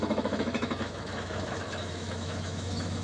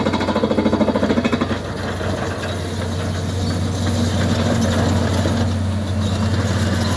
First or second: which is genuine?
second